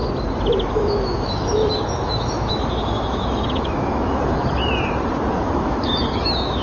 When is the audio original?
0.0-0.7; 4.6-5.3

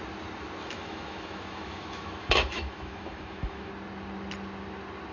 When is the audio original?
0.0-0.6; 3.7-5.1

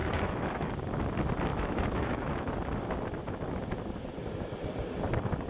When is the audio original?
0.7-1.5; 2.5-5.5

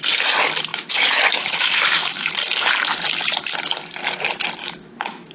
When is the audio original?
0.0-0.7; 2.3-4.6

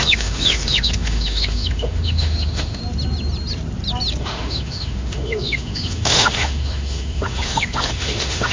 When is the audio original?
2.8-4.2

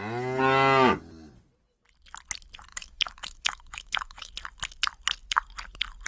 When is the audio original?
0.0-2.7; 4.3-6.1

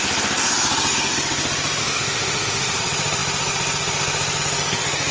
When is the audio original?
0.0-1.8; 2.8-5.1

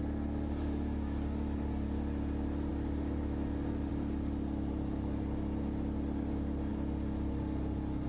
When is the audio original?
0.0-8.1